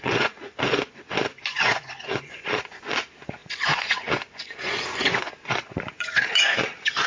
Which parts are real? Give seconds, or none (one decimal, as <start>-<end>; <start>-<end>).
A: none